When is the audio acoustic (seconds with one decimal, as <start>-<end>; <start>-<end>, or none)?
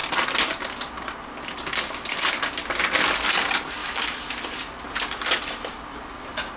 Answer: 0.0-3.8; 4.3-6.6